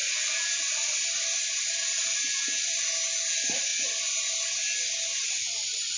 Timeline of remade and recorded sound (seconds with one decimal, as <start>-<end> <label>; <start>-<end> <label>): 0.0-6.0 recorded